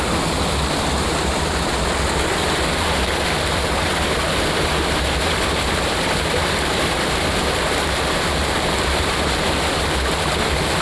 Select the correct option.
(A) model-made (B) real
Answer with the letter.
B